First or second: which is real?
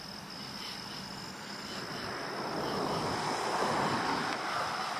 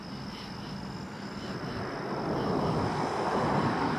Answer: second